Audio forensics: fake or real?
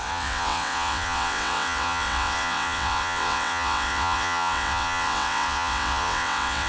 fake